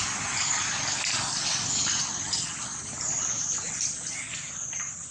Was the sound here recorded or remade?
recorded